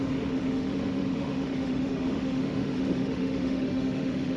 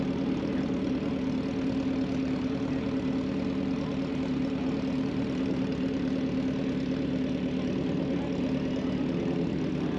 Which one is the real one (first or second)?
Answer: second